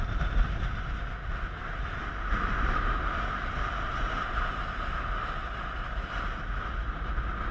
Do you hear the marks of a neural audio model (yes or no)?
no